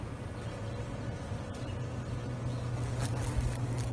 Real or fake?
real